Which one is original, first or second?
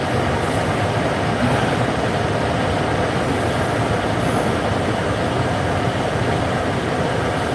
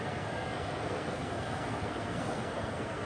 first